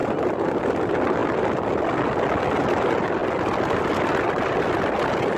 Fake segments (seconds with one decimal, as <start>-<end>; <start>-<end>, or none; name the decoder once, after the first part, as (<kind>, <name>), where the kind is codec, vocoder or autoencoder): 3.2-3.8 (vocoder, BigVGAN v2)